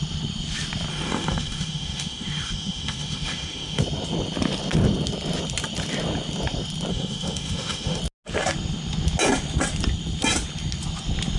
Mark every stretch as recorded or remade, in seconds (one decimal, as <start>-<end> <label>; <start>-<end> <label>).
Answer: 0.0-0.9 recorded; 0.9-3.8 remade; 3.8-6.9 recorded; 6.9-8.0 remade; 8.0-11.4 recorded